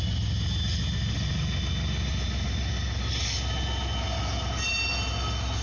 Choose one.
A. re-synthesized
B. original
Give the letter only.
B